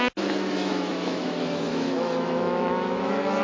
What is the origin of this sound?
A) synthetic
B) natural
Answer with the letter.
A